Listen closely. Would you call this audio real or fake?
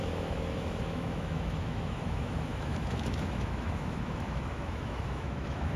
fake